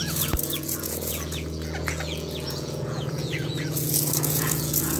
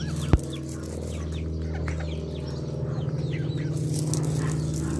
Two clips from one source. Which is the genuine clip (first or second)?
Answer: second